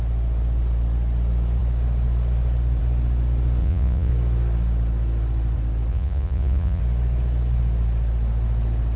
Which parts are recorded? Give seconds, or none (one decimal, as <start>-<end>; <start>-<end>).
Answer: 0.0-3.6; 4.1-5.9; 6.8-9.0